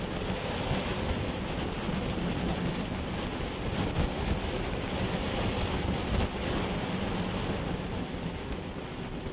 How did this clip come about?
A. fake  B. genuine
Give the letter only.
B